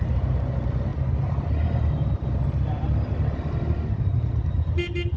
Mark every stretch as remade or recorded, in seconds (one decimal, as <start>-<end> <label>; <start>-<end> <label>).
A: 0.0-5.2 recorded